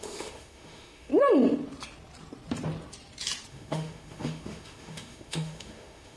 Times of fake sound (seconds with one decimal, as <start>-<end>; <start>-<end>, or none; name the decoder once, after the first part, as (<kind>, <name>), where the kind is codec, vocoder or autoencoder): 0.0-1.1 (autoencoder, DAC-VAE); 3.5-6.2